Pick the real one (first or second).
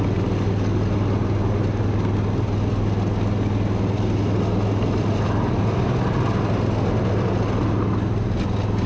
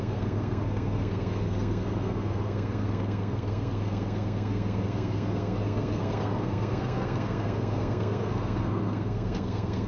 first